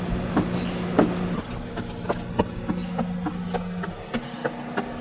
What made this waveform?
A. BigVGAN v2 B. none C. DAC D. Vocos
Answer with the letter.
B